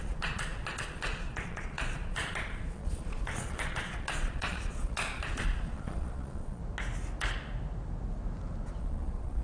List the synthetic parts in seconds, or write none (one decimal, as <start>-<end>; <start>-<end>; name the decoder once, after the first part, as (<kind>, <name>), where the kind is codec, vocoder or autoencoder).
0.0-6.6 (vocoder, Vocos); 8.8-9.4